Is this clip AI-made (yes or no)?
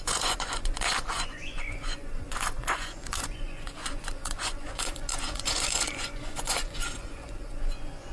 yes